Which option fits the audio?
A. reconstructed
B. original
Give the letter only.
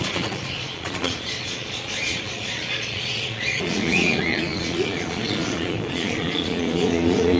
A